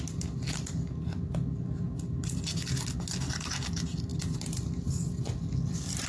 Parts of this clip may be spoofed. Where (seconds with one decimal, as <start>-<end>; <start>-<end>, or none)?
none